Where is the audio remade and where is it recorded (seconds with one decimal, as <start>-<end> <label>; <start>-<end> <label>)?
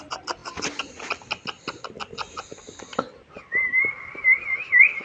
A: 0.0-0.4 remade; 0.4-3.4 recorded; 3.4-5.0 remade